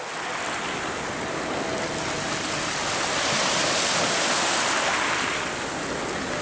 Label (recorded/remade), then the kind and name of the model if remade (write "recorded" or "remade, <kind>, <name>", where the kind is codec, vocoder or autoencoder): recorded